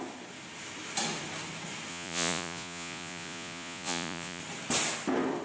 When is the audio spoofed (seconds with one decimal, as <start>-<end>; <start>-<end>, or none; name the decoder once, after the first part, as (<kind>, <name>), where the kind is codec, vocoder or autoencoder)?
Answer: 1.9-4.4 (vocoder, Vocos)